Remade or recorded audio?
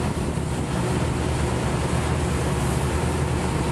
recorded